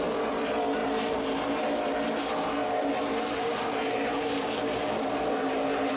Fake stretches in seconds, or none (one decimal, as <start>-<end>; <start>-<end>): 0.8-1.5; 2.6-6.0